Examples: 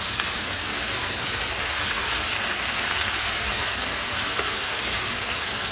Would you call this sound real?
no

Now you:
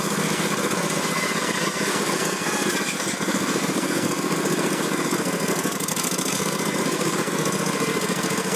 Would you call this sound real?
no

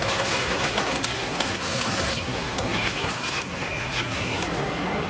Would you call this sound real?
no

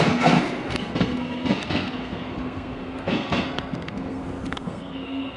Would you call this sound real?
no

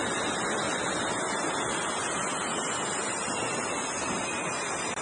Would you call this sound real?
yes